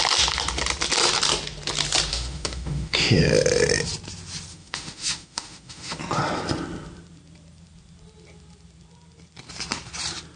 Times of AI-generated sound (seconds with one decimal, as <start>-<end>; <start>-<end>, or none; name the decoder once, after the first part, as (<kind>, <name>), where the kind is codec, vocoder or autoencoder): 2.1-3.2 (autoencoder, DAC-VAE); 4.5-6.0